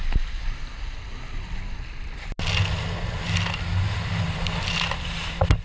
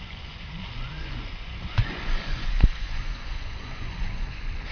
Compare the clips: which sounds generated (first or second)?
second